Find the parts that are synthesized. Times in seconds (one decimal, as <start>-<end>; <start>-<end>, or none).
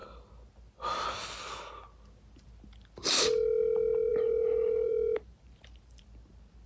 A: 4.1-6.0